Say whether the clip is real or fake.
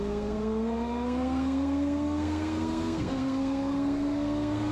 fake